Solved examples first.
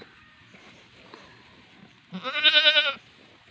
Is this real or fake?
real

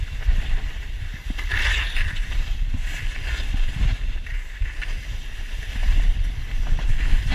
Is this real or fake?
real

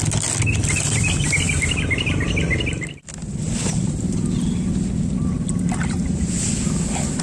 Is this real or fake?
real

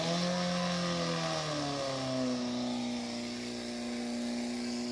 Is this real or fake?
real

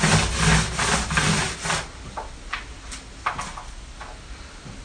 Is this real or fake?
real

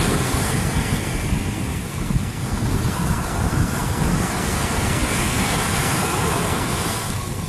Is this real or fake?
fake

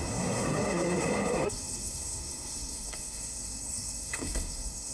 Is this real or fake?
fake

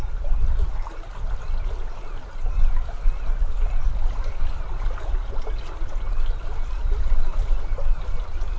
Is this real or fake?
real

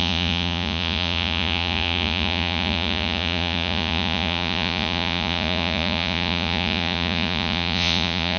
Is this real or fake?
fake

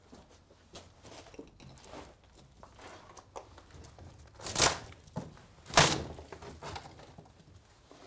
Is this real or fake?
real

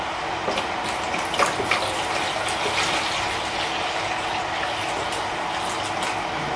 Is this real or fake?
real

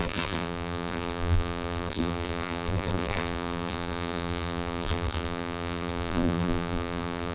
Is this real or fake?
fake